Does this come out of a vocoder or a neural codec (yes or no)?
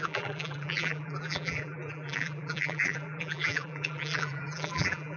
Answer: yes